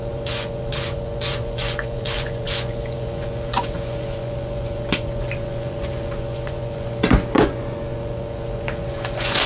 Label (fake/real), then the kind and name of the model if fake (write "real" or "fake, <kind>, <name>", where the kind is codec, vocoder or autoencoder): fake, vocoder, Vocos